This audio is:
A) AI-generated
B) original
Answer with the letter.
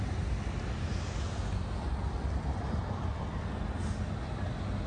B